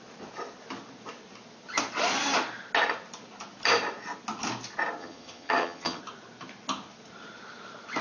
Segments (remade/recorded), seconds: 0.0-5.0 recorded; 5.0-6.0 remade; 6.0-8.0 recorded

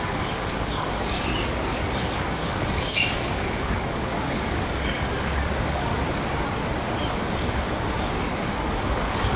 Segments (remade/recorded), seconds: 0.0-5.9 remade; 5.9-7.1 recorded; 7.1-9.4 remade

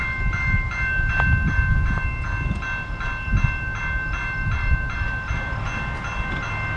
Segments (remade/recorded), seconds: 0.0-6.8 recorded